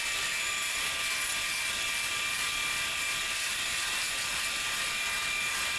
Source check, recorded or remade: recorded